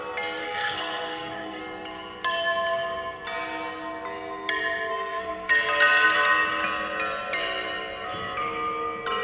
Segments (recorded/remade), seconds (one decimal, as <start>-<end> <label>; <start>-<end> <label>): 0.0-0.4 recorded; 0.4-1.6 remade; 1.6-4.9 recorded; 4.9-5.5 remade; 5.5-9.2 recorded